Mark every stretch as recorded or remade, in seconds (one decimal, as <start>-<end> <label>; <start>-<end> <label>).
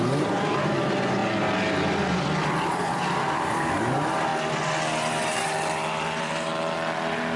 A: 0.0-1.2 remade; 1.2-2.7 recorded; 2.7-4.3 remade; 4.3-5.1 recorded; 5.1-6.5 remade; 6.5-7.4 recorded